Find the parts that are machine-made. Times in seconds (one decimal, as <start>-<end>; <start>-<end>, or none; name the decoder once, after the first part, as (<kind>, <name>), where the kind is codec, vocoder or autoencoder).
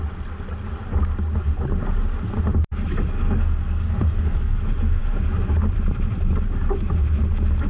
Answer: 3.2-4.6 (codec, SNAC)